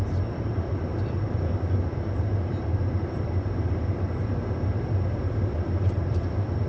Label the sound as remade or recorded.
remade